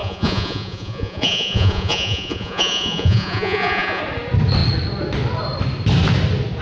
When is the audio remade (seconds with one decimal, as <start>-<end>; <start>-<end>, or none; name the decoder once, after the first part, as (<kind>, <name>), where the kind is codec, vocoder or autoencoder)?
0.0-4.0 (vocoder, Vocos)